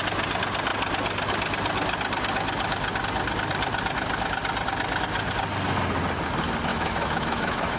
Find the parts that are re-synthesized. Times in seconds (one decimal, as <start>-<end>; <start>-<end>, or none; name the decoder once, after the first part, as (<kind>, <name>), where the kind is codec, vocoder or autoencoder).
6.7-7.8 (autoencoder, DAC-VAE)